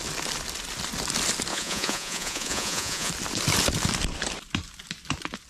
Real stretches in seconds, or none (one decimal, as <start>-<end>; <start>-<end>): 0.0-1.5; 3.1-5.5